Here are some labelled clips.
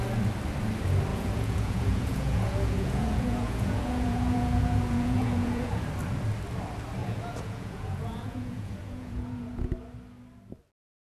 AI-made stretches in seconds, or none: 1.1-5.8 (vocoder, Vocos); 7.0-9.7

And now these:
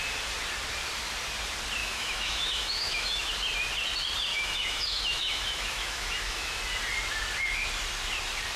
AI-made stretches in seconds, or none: 1.8-3.3 (autoencoder, DAC-VAE); 4.3-6.6

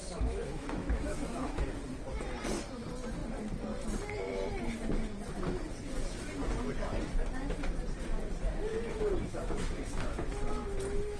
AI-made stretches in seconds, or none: 0.0-1.7 (autoencoder, DAC-VAE); 8.7-11.2

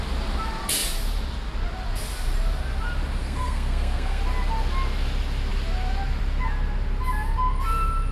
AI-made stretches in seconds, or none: 3.2-4.2 (codec, SNAC)

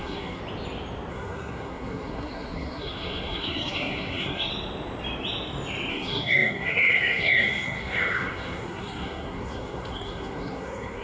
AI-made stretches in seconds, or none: 0.0-0.4 (codec, SNAC); 1.1-4.5; 5.9-11.0